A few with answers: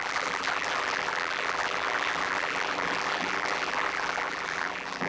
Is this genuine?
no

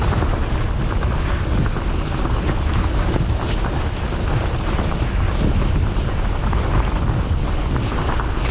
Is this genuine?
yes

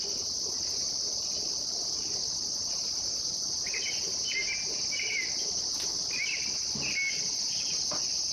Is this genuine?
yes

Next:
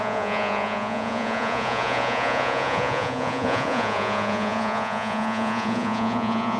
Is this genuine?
no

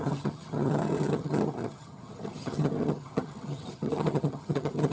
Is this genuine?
no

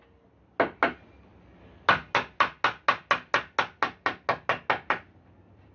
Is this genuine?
yes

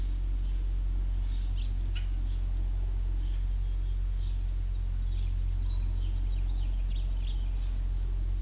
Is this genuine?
yes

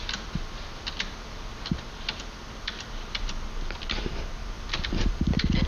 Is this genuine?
yes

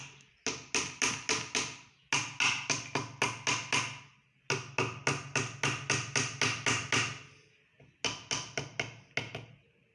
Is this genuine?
yes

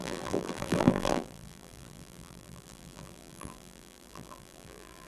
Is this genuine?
no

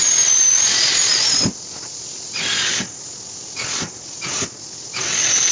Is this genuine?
yes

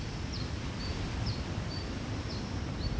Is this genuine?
yes